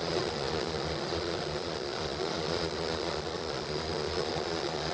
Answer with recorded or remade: remade